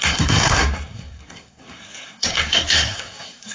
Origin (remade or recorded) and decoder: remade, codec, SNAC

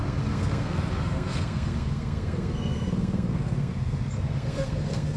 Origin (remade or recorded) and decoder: remade, codec, SNAC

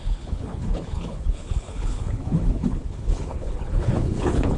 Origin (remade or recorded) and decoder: remade, codec, HILCodec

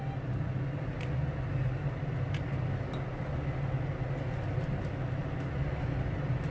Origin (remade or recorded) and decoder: recorded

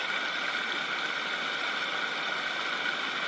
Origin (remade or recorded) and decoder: recorded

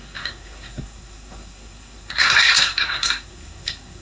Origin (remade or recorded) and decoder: remade, codec, SNAC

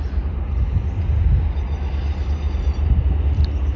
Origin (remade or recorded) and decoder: recorded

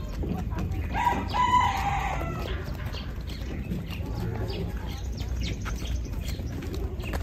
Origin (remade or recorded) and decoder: recorded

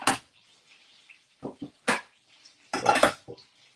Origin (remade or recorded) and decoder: recorded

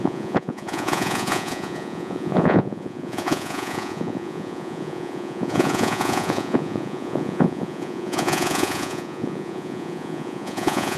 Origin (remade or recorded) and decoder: remade, vocoder, Vocos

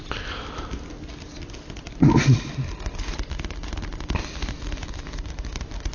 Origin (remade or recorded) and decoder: recorded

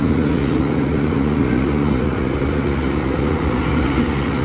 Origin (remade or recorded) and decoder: remade, vocoder, Vocos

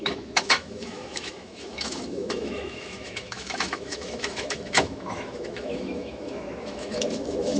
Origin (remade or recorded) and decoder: remade, autoencoder, DAC-VAE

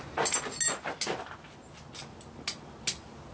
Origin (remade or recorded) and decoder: recorded